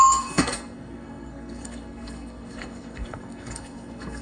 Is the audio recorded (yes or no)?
no